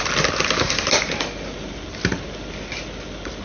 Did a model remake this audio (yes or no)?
no